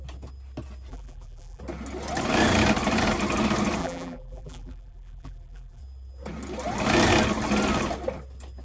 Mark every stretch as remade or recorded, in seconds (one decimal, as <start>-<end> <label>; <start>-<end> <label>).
0.0-0.9 recorded; 0.9-1.6 remade; 1.6-3.8 recorded; 3.8-5.8 remade; 5.8-8.6 recorded